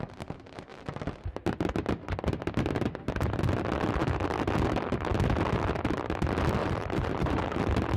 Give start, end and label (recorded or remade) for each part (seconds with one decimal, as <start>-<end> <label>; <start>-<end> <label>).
0.0-6.6 recorded; 6.6-7.6 remade; 7.6-8.0 recorded